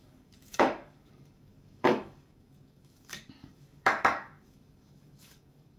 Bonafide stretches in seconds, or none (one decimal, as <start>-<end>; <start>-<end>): none